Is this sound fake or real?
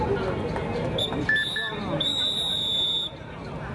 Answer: real